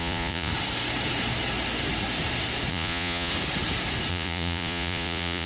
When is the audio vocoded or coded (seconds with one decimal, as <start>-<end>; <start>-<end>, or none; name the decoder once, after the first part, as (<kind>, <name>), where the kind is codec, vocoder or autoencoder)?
0.0-0.5 (vocoder, Vocos); 2.7-3.3; 4.1-5.5